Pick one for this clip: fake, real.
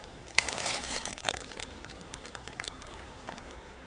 fake